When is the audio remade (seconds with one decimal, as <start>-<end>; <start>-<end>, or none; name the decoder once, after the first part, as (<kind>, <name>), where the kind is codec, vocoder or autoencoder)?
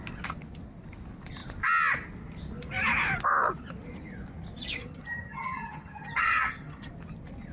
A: 4.8-6.9 (vocoder, HiFi-GAN)